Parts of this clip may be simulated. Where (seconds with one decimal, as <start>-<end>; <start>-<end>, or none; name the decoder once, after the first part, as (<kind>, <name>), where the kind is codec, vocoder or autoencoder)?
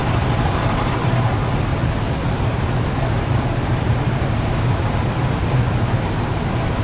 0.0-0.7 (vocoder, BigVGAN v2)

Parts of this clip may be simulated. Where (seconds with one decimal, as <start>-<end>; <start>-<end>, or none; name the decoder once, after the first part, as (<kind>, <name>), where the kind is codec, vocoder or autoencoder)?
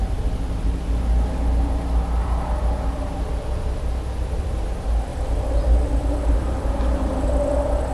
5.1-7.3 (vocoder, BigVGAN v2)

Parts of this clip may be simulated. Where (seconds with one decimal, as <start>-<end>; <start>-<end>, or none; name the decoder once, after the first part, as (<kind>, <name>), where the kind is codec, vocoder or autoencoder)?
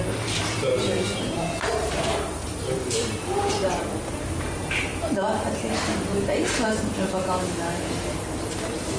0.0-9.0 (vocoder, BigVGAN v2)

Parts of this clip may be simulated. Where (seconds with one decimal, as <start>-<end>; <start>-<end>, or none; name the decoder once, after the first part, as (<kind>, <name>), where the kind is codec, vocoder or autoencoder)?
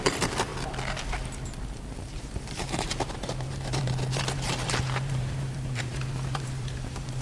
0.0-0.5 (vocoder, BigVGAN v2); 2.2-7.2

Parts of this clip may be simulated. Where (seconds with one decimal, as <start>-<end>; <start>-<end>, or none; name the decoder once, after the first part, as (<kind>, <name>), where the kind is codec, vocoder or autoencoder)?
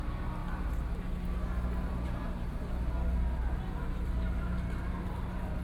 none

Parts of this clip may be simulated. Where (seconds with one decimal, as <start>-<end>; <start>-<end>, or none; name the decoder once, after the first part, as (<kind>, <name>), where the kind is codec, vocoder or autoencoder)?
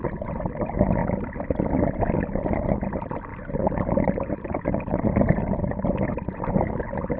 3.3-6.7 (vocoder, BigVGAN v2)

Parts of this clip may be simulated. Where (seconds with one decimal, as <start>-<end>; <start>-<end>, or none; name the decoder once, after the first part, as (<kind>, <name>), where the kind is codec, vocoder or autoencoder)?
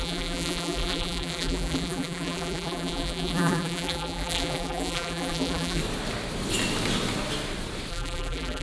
0.0-5.8 (vocoder, BigVGAN v2); 7.9-8.6